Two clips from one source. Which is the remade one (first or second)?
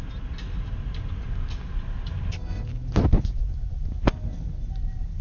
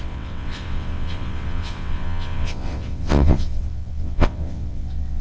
second